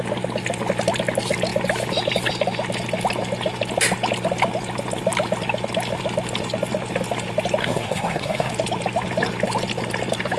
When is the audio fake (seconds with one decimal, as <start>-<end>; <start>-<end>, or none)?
7.6-8.5